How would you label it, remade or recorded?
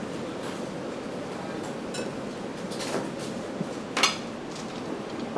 recorded